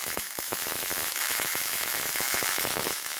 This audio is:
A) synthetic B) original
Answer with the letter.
A